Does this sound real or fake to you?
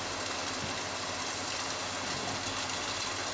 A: real